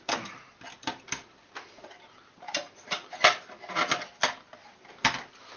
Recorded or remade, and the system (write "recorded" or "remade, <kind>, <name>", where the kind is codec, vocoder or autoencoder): recorded